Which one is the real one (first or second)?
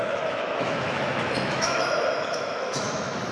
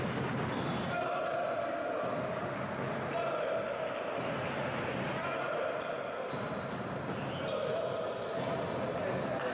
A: second